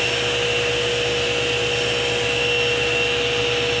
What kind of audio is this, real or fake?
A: real